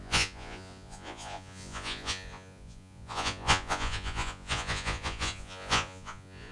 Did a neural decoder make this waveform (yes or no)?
yes